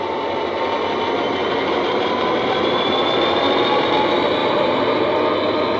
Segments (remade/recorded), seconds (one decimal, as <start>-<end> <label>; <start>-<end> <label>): 0.0-1.4 recorded; 1.4-2.9 remade; 2.9-4.4 recorded; 4.4-5.1 remade; 5.1-5.8 recorded